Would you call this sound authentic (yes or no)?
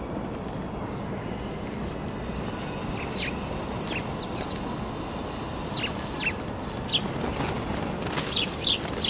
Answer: yes